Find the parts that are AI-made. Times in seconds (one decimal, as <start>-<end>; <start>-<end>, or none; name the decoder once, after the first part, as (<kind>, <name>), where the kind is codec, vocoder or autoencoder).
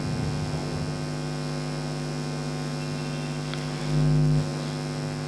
none